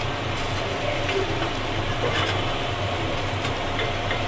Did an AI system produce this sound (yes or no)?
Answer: no